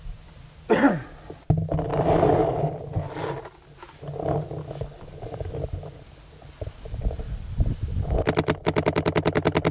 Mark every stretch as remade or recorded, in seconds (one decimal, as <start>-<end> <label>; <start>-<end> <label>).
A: 0.0-1.9 recorded; 1.9-2.7 remade; 2.7-4.6 recorded; 4.6-5.5 remade; 5.5-9.7 recorded